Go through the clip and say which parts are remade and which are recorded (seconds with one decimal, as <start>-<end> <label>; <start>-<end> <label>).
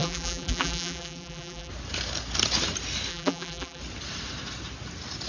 0.0-1.7 remade; 1.7-3.1 recorded; 3.1-3.8 remade; 3.8-5.3 recorded